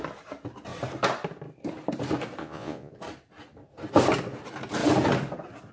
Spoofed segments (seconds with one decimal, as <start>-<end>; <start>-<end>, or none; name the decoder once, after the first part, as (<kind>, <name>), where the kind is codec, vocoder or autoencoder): 2.4-2.9 (vocoder, Vocos)